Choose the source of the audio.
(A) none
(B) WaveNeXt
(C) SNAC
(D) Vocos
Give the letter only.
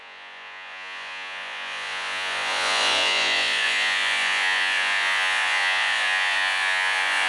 D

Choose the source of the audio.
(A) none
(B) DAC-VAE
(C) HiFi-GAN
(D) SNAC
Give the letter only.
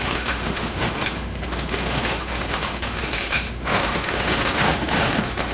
B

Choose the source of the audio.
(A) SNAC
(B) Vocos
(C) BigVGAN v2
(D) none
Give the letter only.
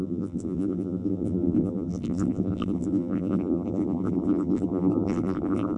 C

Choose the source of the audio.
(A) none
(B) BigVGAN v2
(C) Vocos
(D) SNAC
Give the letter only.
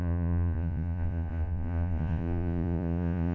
C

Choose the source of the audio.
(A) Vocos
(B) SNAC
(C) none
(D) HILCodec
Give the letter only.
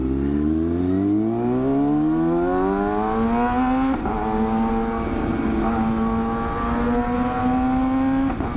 C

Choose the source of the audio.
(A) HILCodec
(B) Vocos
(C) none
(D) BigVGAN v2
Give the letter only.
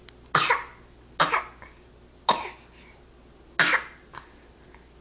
C